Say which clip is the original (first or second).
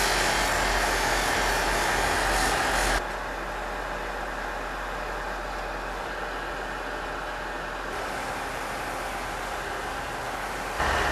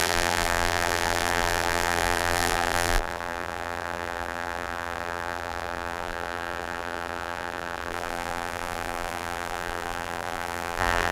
first